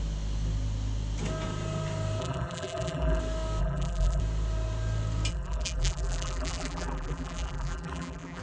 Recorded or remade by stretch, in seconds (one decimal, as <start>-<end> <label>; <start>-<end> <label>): 0.0-2.2 recorded; 2.2-3.2 remade; 3.2-3.6 recorded; 3.6-4.2 remade; 4.2-5.3 recorded; 5.3-8.4 remade